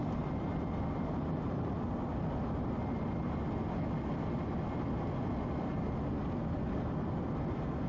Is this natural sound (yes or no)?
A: yes